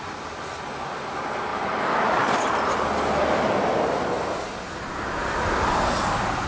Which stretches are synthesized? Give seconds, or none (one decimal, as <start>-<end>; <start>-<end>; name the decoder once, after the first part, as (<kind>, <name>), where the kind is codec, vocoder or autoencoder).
none